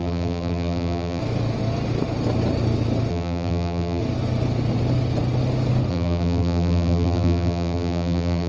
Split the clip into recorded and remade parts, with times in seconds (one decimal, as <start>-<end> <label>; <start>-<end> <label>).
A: 0.0-1.2 remade; 1.2-3.1 recorded; 3.1-4.0 remade; 4.0-5.9 recorded; 5.9-8.5 remade